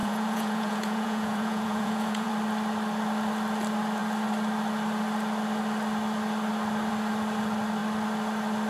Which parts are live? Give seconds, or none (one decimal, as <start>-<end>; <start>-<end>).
2.3-8.7